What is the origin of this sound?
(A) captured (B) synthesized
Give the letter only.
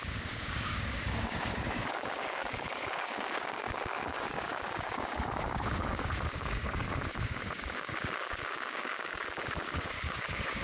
B